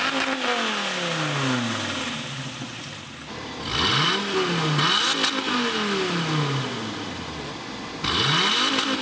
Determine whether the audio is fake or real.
real